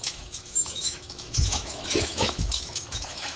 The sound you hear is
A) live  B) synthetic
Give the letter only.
B